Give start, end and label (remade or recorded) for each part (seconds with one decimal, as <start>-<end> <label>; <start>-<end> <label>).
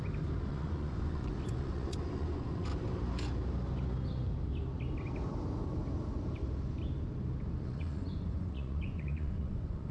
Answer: 0.0-0.5 recorded; 0.5-2.7 remade; 2.7-7.6 recorded; 7.6-9.9 remade